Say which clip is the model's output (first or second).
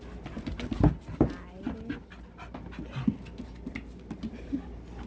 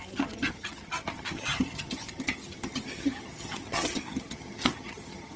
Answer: second